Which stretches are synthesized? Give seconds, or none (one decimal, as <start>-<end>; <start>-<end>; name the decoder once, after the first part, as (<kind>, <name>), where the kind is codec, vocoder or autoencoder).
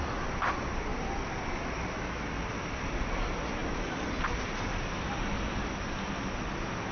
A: none